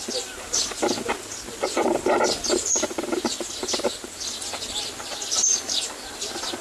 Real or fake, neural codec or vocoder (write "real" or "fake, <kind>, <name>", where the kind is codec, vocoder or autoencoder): real